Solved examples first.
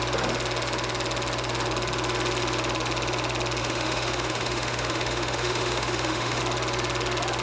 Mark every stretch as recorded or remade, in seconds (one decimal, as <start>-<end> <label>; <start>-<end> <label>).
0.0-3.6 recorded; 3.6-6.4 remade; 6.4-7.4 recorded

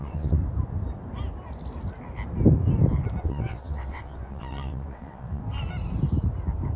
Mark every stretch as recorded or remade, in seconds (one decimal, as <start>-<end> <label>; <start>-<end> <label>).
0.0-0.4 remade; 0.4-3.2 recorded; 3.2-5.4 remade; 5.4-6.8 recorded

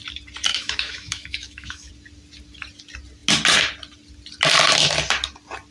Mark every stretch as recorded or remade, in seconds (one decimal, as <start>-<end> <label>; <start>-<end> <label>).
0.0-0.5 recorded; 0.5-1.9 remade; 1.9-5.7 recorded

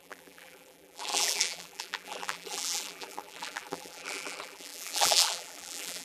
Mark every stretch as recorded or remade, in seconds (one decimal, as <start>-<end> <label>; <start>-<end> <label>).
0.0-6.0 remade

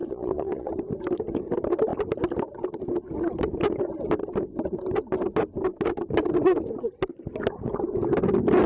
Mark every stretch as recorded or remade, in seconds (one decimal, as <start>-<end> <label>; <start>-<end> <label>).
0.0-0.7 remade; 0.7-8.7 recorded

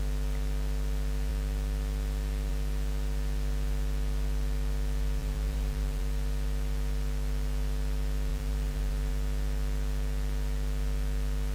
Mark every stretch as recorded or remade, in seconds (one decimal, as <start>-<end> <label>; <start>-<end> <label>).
0.0-5.2 recorded; 5.2-6.0 remade; 6.0-8.3 recorded; 8.3-9.1 remade; 9.1-11.5 recorded

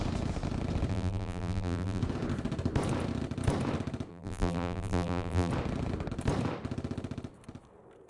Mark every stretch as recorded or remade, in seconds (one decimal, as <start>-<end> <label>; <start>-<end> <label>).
0.0-0.9 recorded; 0.9-2.0 remade; 2.0-4.1 recorded; 4.1-5.5 remade; 5.5-8.1 recorded